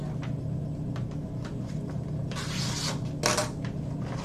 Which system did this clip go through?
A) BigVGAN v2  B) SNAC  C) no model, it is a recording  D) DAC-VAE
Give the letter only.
C